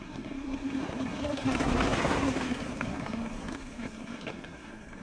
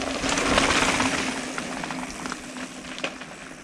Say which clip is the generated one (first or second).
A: first